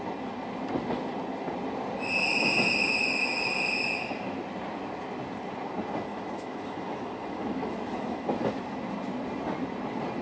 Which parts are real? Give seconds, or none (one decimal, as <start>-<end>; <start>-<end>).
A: 0.0-6.1; 8.5-10.2